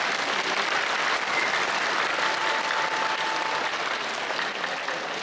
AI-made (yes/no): yes